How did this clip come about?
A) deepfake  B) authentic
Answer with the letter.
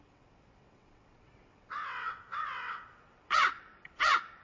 A